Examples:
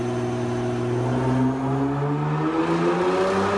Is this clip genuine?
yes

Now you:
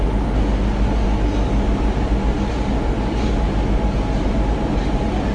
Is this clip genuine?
yes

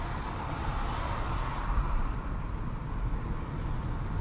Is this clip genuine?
yes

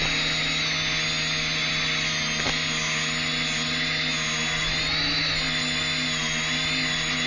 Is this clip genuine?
yes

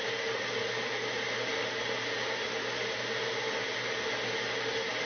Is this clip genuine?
yes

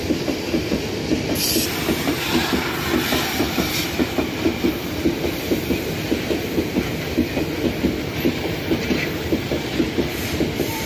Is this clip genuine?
no